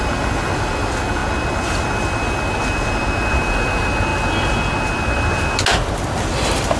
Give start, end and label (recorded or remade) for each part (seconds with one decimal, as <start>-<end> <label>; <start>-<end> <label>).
0.0-6.8 recorded